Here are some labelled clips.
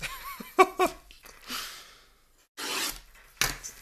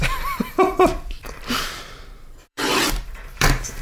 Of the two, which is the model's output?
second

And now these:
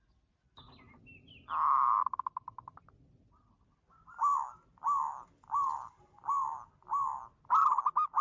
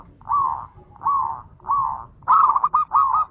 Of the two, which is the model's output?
second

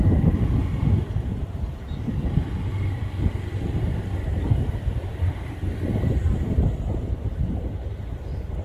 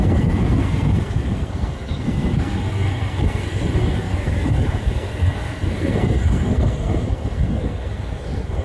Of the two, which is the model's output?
second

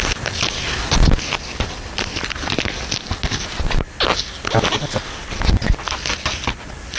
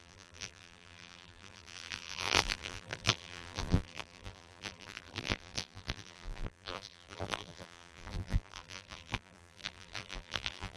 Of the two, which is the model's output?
second